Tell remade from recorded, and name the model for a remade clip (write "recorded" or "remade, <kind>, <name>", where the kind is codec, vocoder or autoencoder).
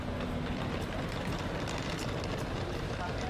recorded